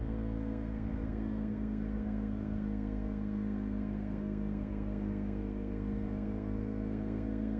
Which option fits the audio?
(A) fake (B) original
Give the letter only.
A